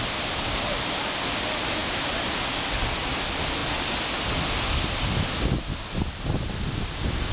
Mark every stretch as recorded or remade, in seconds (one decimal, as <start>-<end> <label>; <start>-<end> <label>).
0.0-7.3 recorded